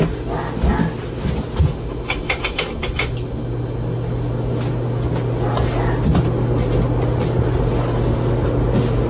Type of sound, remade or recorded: recorded